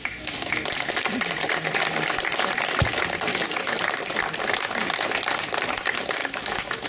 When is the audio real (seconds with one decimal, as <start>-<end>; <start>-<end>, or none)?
0.0-3.3; 3.8-6.2